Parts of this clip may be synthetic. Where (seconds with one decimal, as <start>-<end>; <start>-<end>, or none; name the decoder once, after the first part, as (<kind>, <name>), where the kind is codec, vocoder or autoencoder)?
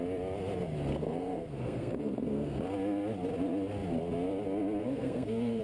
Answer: 0.9-2.6 (codec, SNAC); 4.8-5.6